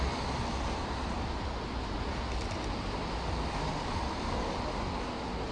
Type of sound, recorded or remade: recorded